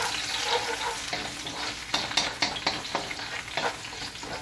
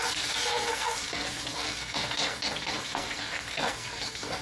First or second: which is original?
first